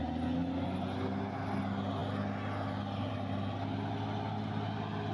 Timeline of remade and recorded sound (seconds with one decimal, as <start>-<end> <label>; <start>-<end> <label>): 0.0-5.1 recorded